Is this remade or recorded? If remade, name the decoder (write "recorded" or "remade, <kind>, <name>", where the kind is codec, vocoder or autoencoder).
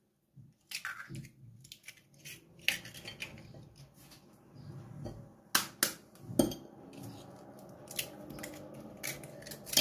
recorded